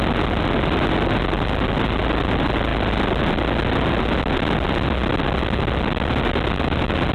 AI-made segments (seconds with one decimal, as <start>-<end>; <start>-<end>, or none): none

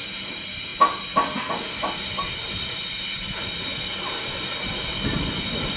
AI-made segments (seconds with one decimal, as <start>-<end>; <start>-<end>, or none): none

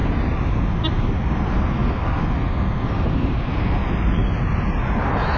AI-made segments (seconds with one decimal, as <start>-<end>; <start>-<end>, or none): 0.0-1.8; 2.9-4.2